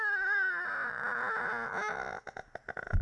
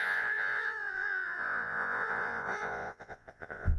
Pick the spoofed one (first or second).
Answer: second